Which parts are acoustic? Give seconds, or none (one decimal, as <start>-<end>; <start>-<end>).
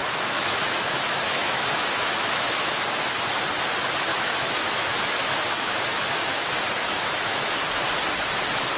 3.0-4.1; 6.5-7.1; 7.7-8.8